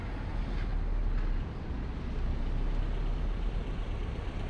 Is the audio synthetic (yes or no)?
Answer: no